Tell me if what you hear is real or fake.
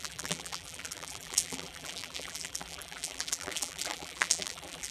fake